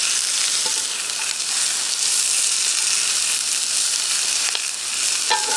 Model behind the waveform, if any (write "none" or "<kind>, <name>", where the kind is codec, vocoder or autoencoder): none